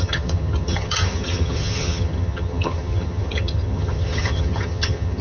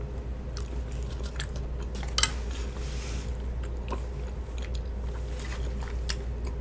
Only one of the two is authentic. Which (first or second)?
second